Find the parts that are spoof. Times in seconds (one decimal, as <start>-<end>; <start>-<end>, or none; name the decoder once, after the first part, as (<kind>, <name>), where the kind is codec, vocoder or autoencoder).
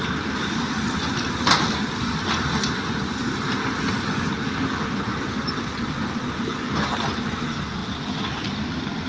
none